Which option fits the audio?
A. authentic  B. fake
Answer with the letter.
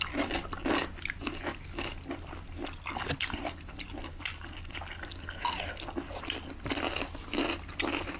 A